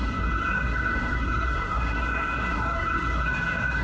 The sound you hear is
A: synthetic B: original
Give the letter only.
A